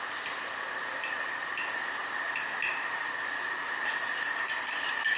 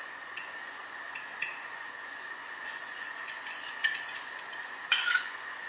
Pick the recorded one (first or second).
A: first